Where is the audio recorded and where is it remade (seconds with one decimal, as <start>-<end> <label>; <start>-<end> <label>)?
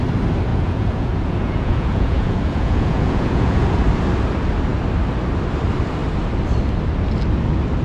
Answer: 0.0-0.5 recorded; 0.5-3.8 remade; 3.8-7.8 recorded